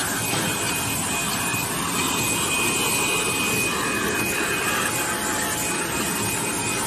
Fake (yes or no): no